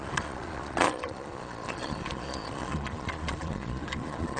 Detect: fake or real fake